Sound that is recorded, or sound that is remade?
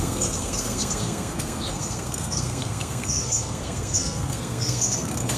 remade